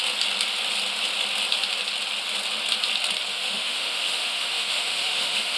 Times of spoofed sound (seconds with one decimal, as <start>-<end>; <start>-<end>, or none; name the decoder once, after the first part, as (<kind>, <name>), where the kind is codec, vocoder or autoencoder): 3.3-5.6 (autoencoder, DAC-VAE)